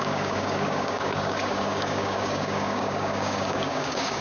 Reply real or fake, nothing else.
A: fake